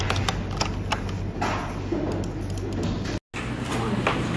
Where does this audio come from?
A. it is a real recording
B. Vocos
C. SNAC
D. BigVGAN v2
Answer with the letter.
A